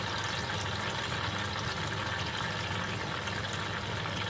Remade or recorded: recorded